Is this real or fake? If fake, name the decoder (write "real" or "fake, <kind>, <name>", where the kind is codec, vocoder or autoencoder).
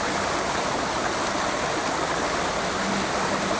real